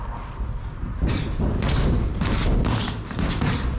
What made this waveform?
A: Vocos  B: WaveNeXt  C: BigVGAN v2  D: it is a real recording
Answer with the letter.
D